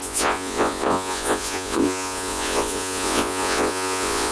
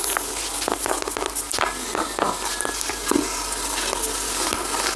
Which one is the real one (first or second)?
second